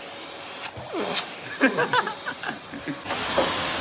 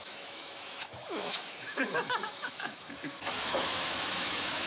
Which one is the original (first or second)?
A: first